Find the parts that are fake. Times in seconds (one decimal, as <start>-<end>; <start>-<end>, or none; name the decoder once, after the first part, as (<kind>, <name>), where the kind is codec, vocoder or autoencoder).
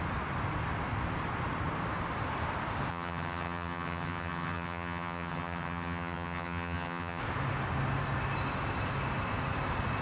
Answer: 2.9-7.2 (vocoder, HiFi-GAN)